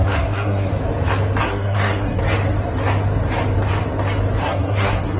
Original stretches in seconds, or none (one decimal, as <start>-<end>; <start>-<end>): 0.7-1.4; 2.2-4.4